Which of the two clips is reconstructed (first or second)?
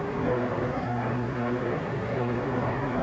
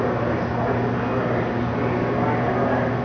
first